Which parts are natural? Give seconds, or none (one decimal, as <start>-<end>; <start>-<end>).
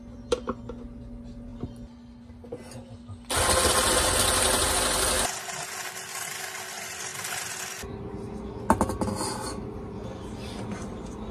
0.0-11.3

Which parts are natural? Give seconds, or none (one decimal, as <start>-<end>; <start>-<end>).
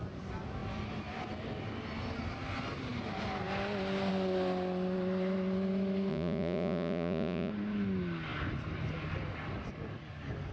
0.0-6.1; 7.5-10.5